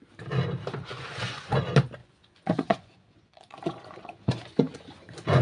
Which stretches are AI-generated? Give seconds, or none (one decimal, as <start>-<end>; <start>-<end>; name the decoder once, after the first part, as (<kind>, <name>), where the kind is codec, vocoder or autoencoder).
0.9-1.6 (vocoder, Vocos); 2.0-5.4